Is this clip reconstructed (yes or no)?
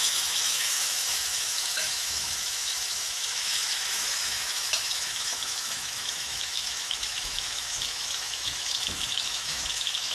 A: yes